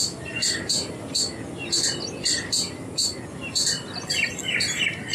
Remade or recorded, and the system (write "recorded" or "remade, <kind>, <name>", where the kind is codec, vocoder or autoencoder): recorded